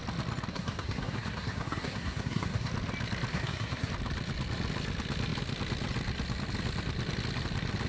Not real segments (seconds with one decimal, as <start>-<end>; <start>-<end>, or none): 0.5-2.7; 3.3-3.9